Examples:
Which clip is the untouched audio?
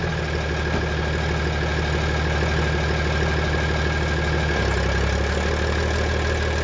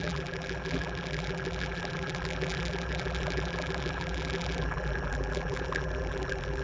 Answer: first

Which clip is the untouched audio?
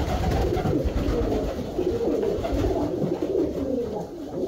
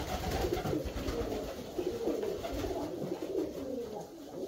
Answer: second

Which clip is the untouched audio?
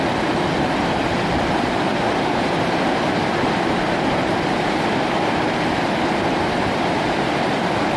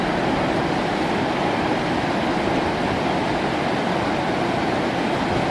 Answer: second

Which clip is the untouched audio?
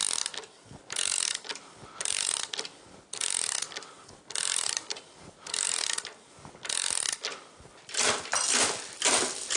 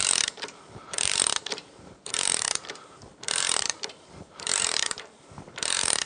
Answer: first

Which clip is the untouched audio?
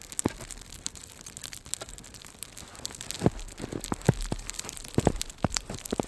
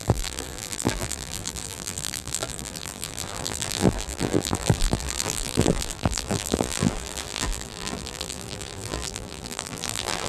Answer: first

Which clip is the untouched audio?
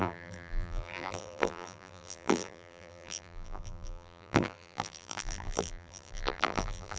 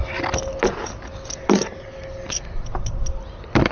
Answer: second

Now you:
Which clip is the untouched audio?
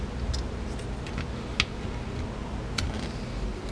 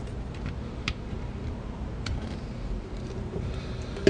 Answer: first